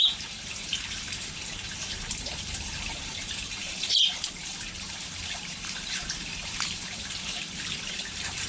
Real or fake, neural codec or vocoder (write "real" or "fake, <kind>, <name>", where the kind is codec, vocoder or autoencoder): fake, vocoder, BigVGAN v2